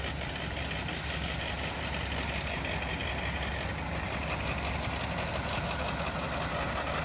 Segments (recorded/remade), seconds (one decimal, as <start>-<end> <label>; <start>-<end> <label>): 0.0-7.0 recorded